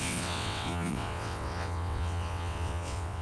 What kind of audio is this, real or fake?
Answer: fake